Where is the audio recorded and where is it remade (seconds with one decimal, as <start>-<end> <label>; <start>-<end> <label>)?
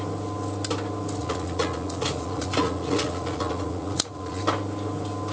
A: 0.0-1.2 recorded; 1.2-4.4 remade; 4.4-5.3 recorded